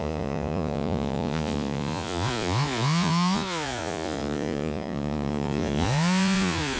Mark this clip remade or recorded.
remade